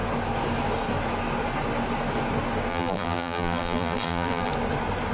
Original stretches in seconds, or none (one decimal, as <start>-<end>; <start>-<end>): 0.0-2.7; 4.5-5.1